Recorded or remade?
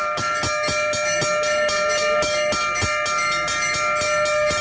recorded